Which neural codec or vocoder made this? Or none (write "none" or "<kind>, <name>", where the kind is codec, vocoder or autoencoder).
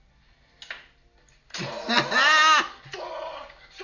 none